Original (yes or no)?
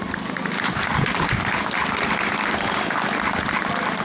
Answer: yes